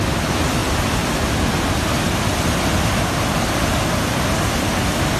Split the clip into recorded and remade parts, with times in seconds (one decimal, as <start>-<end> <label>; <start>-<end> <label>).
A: 0.0-5.2 recorded

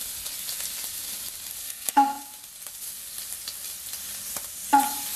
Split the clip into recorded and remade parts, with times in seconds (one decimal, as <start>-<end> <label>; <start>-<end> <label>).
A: 0.0-1.6 recorded; 1.6-2.2 remade; 2.2-5.2 recorded

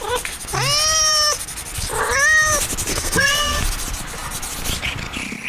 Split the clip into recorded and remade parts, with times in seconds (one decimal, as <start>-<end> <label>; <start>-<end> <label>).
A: 0.0-2.9 recorded; 2.9-3.6 remade; 3.6-5.5 recorded

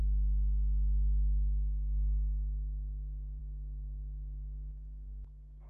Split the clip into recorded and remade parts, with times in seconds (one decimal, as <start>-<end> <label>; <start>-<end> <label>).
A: 0.0-5.7 recorded

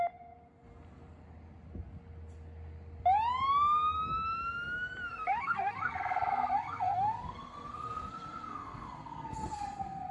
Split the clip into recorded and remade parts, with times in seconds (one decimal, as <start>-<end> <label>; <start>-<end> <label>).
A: 0.0-5.1 recorded; 5.1-10.1 remade

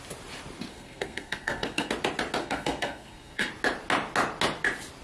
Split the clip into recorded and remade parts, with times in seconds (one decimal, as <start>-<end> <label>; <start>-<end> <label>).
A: 0.0-0.7 recorded; 0.7-1.9 remade; 1.9-2.4 recorded; 2.4-3.5 remade; 3.5-5.0 recorded

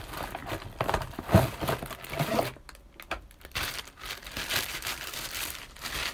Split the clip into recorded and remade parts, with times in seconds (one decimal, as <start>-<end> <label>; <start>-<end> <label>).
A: 0.0-6.1 recorded

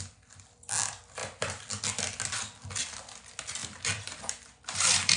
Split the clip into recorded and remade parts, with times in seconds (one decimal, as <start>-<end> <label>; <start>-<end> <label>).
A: 0.0-5.2 recorded